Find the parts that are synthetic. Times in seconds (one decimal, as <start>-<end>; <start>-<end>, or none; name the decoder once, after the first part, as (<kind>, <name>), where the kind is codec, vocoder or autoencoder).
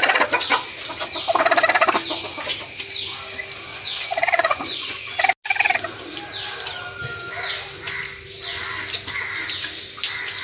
3.7-5.2 (vocoder, Vocos)